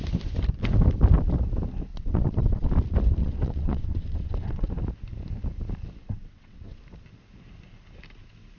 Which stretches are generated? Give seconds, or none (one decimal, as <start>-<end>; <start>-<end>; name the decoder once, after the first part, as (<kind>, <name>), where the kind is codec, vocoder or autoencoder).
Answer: 1.9-2.7 (vocoder, WaveNeXt); 3.2-4.7; 6.0-6.8